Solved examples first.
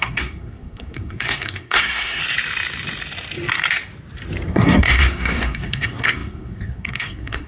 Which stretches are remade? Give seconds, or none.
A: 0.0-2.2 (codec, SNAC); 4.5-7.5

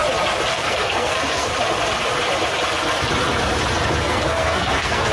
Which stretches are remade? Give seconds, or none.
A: 0.5-1.5 (codec, SNAC); 4.0-5.1

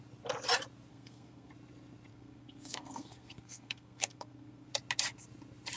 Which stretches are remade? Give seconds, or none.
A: 0.9-1.5 (codec, SNAC); 2.1-4.7